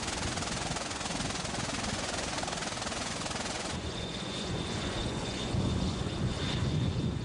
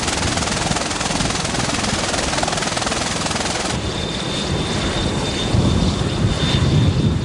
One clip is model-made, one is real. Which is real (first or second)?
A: second